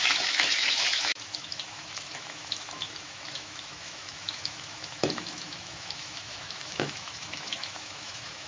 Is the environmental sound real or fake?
fake